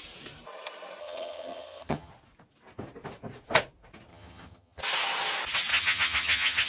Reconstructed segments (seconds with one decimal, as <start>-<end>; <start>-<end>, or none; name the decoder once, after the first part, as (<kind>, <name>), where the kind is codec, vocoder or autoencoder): 1.0-2.1 (vocoder, HiFi-GAN); 4.1-4.8; 5.7-6.7